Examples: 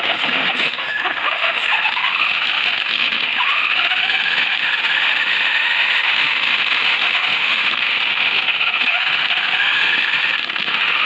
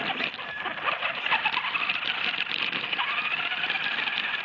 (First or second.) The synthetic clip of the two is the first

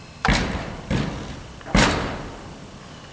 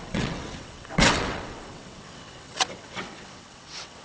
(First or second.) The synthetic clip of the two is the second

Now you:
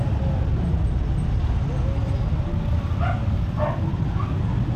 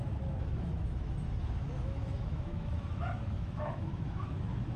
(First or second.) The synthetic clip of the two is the second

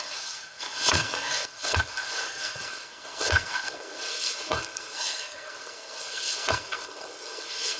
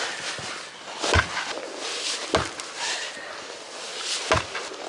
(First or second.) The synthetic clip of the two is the first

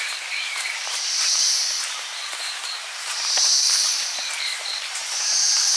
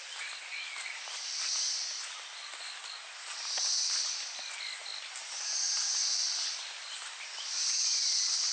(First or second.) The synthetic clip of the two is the first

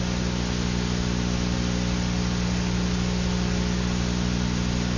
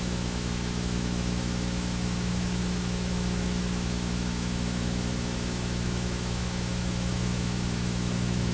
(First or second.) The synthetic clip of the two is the second